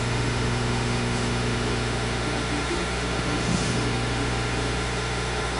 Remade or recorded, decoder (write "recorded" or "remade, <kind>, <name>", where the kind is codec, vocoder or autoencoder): remade, autoencoder, DAC-VAE